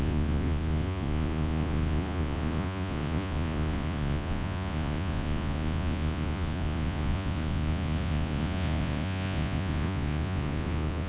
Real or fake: fake